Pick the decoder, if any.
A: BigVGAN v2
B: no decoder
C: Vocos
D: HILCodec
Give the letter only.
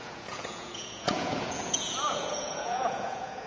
C